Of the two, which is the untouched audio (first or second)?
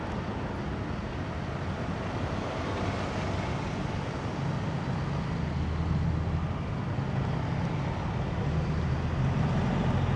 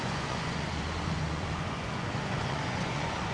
first